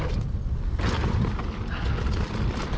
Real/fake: real